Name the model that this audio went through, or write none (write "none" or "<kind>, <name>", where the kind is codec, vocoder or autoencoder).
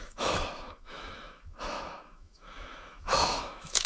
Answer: autoencoder, DAC-VAE